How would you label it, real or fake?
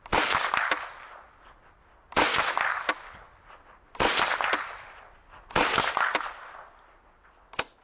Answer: real